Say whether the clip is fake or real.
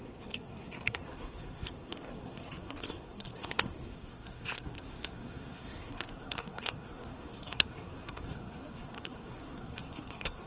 fake